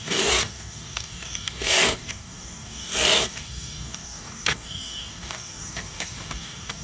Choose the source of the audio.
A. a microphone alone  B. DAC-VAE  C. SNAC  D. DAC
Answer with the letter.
D